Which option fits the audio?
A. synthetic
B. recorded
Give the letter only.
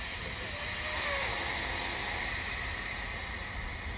B